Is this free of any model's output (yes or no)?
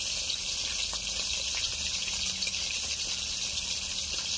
yes